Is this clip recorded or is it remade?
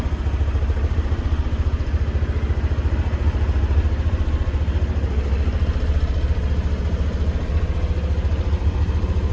recorded